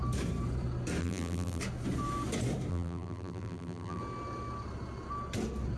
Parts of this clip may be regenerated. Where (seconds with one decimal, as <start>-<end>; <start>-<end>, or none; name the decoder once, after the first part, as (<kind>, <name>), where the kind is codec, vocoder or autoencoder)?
1.0-1.6 (vocoder, BigVGAN v2); 2.7-4.0